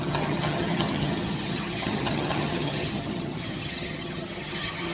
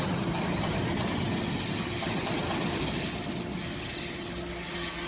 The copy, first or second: first